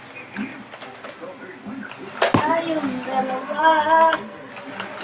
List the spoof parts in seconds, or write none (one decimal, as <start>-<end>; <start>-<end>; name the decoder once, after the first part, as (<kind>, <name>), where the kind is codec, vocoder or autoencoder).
3.2-4.5 (codec, SNAC)